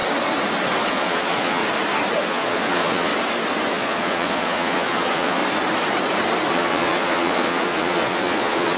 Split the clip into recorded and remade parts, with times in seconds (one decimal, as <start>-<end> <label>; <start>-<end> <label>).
0.0-0.9 recorded; 0.9-1.6 remade; 1.6-2.3 recorded; 2.3-3.1 remade; 3.1-3.7 recorded; 3.7-5.4 remade; 5.4-6.5 recorded; 6.5-8.8 remade